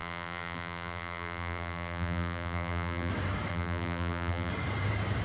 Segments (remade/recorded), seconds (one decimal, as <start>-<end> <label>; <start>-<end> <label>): 0.0-3.1 remade; 3.1-3.5 recorded; 3.5-4.5 remade; 4.5-5.2 recorded